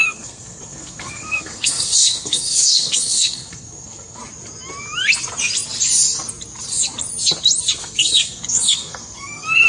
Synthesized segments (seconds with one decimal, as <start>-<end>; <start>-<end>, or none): 0.0-4.2; 7.8-9.7